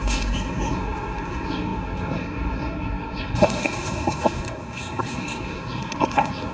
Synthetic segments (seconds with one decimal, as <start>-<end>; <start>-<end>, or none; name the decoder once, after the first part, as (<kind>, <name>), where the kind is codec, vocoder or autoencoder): 0.0-6.5 (codec, SNAC)

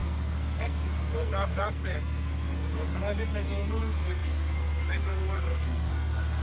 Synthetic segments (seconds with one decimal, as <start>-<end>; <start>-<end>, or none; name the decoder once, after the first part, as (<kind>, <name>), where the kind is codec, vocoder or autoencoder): 0.0-6.4 (codec, SNAC)

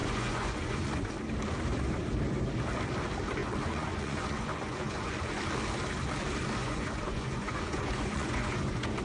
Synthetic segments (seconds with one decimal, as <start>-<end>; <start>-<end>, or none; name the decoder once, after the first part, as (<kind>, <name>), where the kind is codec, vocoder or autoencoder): 0.0-1.1 (vocoder, Vocos); 3.4-5.4; 6.6-9.0

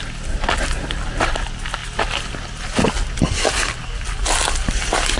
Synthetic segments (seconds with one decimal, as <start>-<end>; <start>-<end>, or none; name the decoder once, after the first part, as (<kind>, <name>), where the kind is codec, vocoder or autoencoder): none

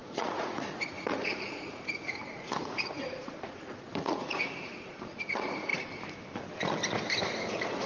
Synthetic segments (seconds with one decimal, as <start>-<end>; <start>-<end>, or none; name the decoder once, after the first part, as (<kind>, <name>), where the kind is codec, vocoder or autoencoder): 0.0-5.7 (vocoder, Vocos); 7.2-7.9